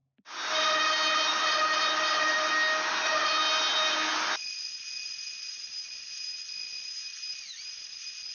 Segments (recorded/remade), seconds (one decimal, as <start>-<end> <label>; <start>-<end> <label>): 0.0-8.3 recorded